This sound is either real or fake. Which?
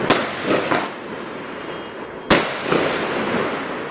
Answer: real